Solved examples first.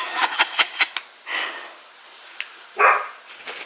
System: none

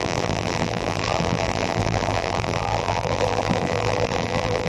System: vocoder, BigVGAN v2